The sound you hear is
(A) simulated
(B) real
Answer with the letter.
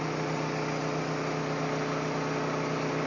B